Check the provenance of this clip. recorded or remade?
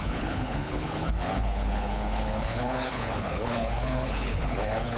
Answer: remade